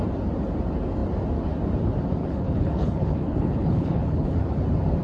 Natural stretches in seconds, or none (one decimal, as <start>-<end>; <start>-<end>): 0.0-2.2; 4.6-5.0